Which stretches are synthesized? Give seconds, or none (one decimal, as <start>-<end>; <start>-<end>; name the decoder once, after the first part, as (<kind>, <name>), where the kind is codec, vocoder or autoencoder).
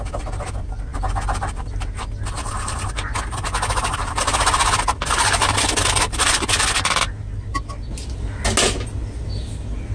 none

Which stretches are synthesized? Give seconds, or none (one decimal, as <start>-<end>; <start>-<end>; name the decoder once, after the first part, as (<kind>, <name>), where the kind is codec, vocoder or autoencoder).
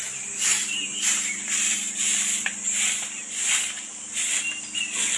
0.5-3.6 (vocoder, BigVGAN v2)